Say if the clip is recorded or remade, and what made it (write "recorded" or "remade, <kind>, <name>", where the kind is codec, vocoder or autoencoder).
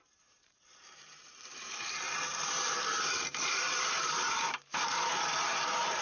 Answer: remade, vocoder, BigVGAN v2